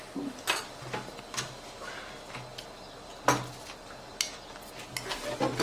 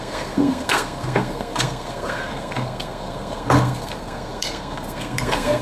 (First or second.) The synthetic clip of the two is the second